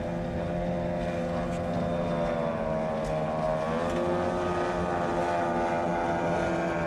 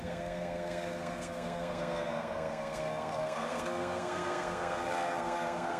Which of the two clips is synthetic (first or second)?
second